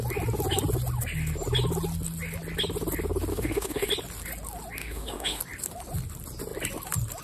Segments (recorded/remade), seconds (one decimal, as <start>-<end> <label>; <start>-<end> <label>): 0.0-3.3 recorded; 3.3-3.9 remade; 3.9-4.8 recorded; 4.8-5.4 remade; 5.4-7.2 recorded

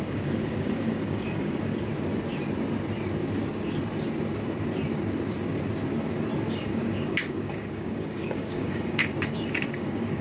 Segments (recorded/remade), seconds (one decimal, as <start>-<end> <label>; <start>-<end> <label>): 0.0-1.9 remade; 1.9-6.5 recorded; 6.5-9.0 remade; 9.0-9.7 recorded; 9.7-10.2 remade